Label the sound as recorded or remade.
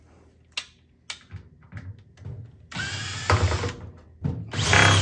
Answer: recorded